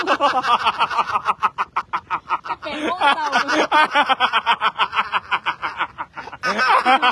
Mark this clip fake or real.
real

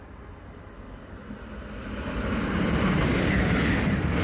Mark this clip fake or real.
real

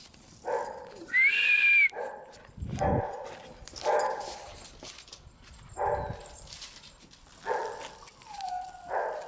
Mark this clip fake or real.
real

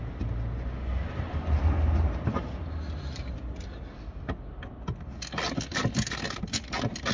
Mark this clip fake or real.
real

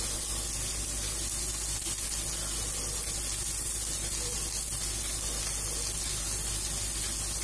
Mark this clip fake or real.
real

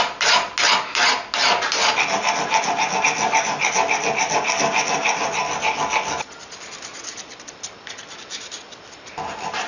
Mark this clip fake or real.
real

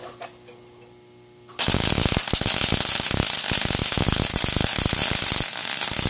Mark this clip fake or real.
real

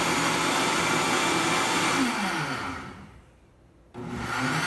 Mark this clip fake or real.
real